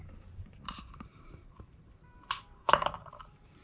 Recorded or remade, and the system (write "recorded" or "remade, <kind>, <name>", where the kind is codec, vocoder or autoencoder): remade, vocoder, BigVGAN v2